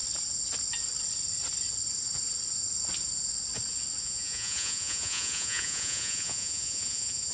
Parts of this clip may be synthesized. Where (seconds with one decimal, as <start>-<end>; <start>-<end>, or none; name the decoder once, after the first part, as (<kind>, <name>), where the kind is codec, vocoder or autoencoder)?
4.0-7.3 (vocoder, Vocos)